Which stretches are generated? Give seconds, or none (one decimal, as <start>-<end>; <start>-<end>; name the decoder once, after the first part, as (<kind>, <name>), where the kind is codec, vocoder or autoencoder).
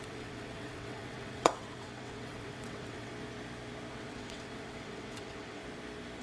0.0-3.1 (vocoder, WaveNeXt); 3.9-5.6